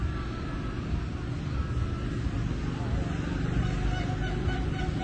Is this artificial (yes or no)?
no